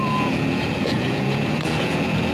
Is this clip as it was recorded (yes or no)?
no